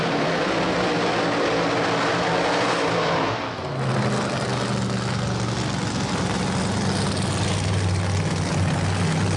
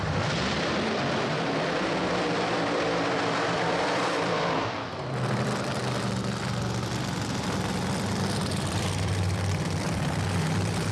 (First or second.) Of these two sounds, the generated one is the second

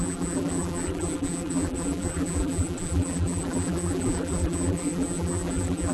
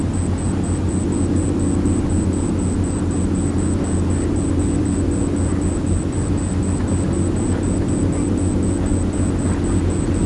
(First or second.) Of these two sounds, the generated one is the first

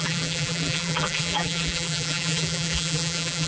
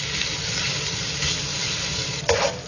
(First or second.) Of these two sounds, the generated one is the first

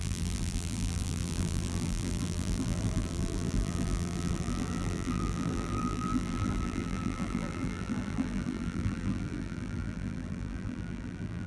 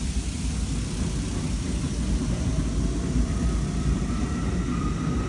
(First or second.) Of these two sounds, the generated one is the first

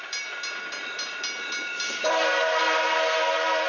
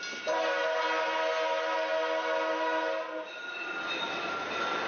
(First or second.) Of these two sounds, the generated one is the first